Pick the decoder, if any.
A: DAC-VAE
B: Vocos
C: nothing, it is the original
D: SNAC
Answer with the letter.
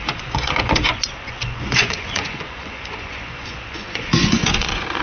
B